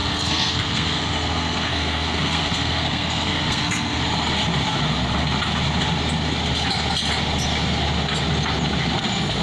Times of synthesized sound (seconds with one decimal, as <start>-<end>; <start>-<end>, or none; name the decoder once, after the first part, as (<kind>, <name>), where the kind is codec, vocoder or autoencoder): 0.0-4.0 (codec, SNAC)